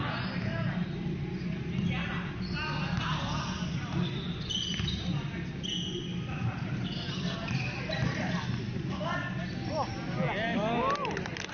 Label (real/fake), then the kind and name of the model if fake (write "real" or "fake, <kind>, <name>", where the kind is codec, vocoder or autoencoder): real